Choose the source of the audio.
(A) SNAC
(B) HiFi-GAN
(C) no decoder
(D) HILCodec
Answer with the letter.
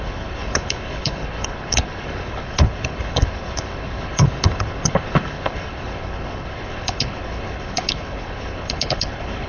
D